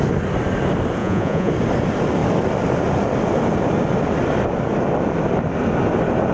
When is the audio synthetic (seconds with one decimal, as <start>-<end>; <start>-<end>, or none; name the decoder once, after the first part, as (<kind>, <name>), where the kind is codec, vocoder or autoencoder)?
1.0-1.5 (vocoder, Vocos)